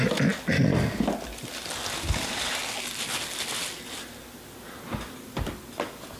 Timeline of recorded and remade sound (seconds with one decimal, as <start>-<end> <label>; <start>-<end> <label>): 0.0-6.2 recorded